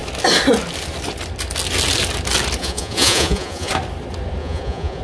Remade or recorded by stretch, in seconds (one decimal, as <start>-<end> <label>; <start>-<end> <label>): 0.0-2.6 recorded; 2.6-3.7 remade; 3.7-4.4 recorded; 4.4-5.0 remade